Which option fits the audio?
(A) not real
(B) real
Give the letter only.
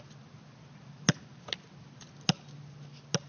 B